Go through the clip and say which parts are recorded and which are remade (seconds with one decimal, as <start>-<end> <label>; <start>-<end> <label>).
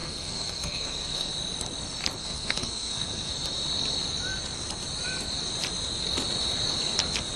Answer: 0.0-1.3 remade; 1.3-2.2 recorded; 2.2-3.3 remade; 3.3-7.4 recorded